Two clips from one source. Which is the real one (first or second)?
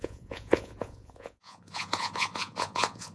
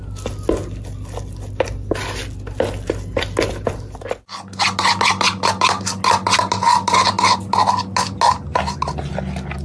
second